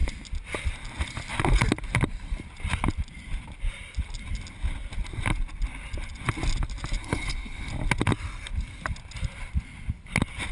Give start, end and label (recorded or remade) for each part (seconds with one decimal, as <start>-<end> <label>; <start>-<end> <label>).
0.0-7.0 recorded; 7.0-7.7 remade; 7.7-10.5 recorded